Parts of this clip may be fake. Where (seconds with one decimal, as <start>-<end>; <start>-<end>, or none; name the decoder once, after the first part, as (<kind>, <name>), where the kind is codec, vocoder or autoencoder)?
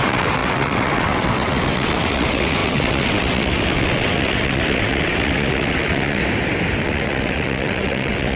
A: 0.0-6.2 (vocoder, WaveNeXt); 6.8-8.4